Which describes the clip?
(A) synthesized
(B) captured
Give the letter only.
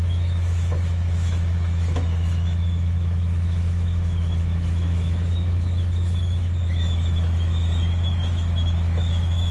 A